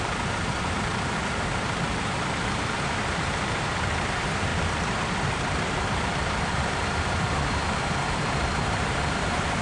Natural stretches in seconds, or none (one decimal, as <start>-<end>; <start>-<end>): 4.5-6.0